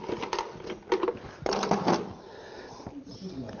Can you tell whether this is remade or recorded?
recorded